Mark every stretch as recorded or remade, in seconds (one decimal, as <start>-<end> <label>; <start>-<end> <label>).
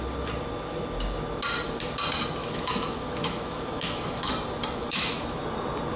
0.0-2.4 recorded; 2.4-4.3 remade; 4.3-4.8 recorded; 4.8-5.4 remade; 5.4-6.0 recorded